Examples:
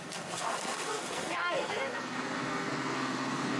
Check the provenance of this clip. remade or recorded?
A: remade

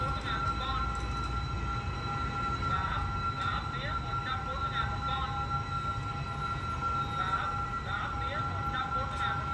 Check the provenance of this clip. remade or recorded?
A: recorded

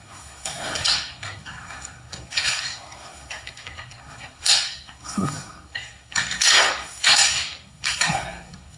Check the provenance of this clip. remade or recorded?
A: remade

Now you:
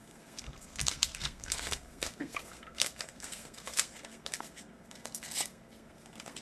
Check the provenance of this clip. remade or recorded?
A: remade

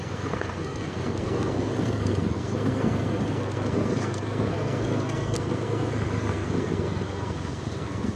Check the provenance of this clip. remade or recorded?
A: remade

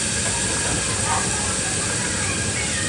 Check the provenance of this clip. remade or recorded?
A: recorded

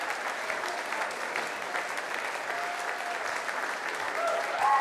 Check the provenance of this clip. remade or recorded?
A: recorded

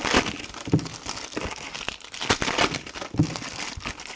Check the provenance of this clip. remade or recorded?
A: recorded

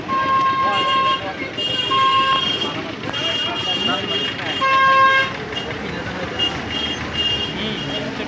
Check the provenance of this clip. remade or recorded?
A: recorded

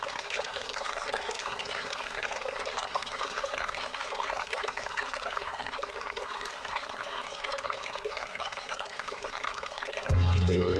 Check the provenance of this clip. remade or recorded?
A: remade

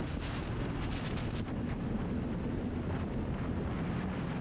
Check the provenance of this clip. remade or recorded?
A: recorded